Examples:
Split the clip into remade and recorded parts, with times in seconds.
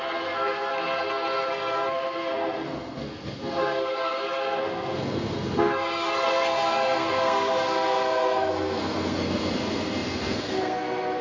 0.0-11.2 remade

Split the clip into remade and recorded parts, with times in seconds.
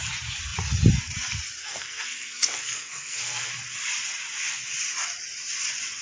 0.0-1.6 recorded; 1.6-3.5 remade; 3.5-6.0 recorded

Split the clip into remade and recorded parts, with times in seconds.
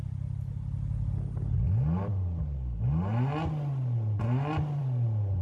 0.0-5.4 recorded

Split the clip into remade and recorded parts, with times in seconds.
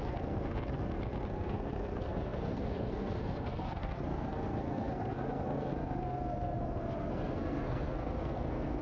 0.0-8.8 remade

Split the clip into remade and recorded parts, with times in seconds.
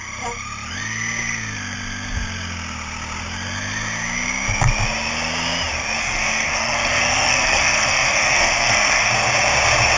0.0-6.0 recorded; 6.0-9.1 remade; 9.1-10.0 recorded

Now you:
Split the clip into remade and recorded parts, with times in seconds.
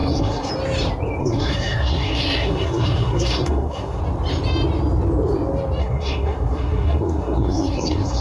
0.0-0.5 remade; 0.5-1.2 recorded; 1.2-4.0 remade; 4.0-5.8 recorded; 5.8-8.2 remade